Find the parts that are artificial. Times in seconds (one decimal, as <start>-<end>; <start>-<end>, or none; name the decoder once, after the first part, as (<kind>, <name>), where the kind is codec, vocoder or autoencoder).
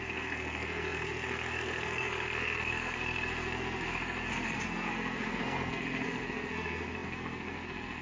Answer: 0.0-8.0 (codec, SNAC)